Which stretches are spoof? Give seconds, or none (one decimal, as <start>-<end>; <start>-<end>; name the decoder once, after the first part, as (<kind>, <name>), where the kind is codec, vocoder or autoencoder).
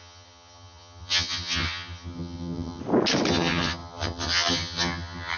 0.0-2.8 (vocoder, HiFi-GAN); 3.3-5.4